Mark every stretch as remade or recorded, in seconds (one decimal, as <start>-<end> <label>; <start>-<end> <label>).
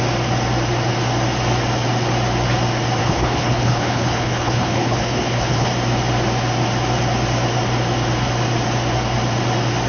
0.0-3.0 recorded; 3.0-5.7 remade; 5.7-9.9 recorded